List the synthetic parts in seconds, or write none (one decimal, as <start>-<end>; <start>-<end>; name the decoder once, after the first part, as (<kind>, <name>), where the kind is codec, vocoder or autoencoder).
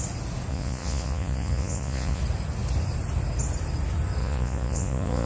0.5-2.2 (vocoder, Vocos); 4.2-5.3